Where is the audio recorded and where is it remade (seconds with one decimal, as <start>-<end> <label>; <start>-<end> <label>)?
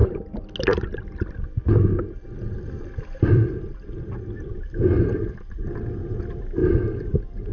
0.0-2.8 recorded; 2.8-7.5 remade